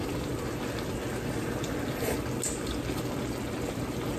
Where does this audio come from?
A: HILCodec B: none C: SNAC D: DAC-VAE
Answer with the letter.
B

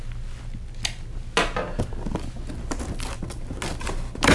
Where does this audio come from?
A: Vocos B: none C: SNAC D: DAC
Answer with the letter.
B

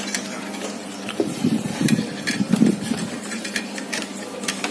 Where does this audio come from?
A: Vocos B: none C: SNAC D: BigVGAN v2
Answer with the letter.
D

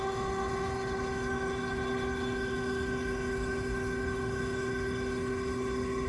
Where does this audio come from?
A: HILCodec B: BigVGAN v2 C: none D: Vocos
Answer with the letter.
A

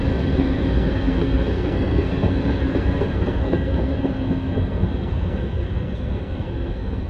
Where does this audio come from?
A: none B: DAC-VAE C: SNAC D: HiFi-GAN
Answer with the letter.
C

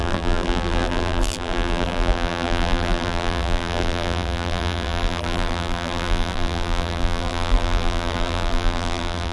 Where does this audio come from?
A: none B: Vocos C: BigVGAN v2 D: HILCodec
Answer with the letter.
C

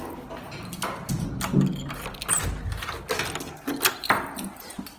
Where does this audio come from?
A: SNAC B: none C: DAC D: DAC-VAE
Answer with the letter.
B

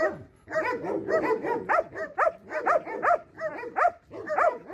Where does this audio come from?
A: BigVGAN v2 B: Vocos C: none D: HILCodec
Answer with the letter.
C